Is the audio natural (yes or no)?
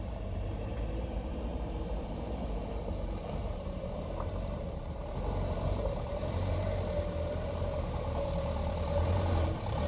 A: no